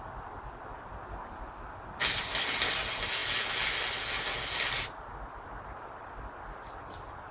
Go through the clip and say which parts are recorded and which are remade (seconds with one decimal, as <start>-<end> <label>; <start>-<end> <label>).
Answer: 0.0-7.3 recorded